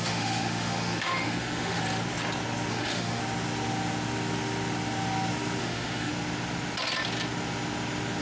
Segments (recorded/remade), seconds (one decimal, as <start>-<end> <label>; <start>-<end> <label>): 0.0-1.8 remade; 1.8-2.7 recorded; 2.7-3.2 remade; 3.2-5.6 recorded; 5.6-6.1 remade; 6.1-8.2 recorded